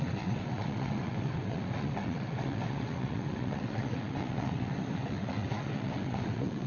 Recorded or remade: remade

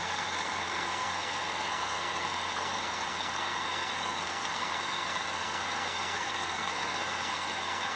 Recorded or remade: remade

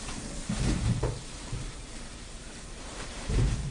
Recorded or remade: remade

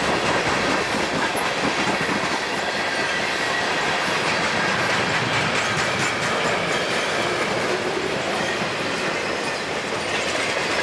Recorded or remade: recorded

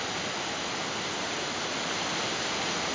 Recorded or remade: recorded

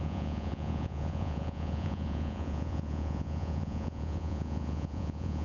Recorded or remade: remade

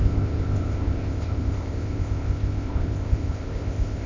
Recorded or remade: remade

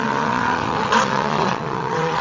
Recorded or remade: remade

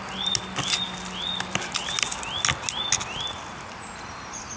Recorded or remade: recorded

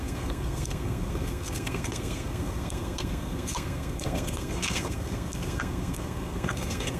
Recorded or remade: remade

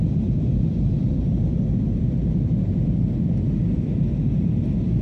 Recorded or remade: remade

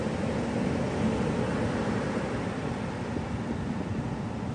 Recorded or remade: recorded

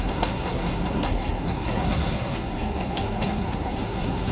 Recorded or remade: remade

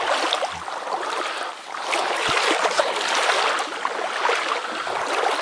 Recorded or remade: recorded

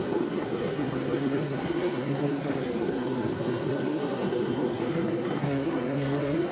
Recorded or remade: remade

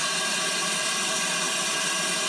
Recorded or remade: recorded